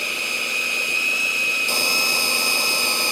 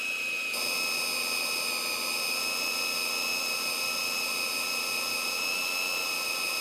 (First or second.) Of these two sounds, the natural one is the second